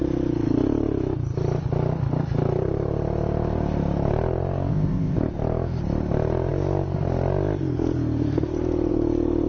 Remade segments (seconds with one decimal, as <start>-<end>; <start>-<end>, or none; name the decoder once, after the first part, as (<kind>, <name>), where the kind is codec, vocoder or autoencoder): 4.7-5.2 (codec, ZipCodec)